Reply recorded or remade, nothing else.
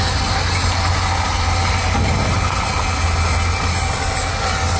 recorded